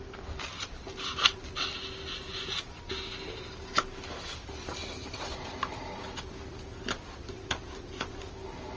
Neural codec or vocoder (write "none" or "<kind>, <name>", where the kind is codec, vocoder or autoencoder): none